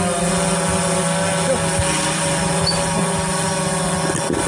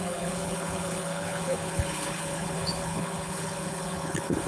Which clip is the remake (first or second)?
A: second